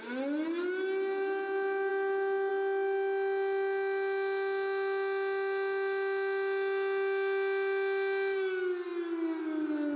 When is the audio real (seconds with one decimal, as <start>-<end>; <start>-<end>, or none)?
0.0-10.0